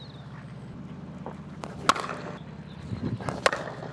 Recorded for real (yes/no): yes